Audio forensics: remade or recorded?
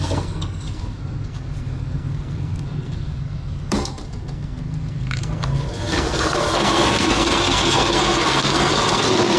remade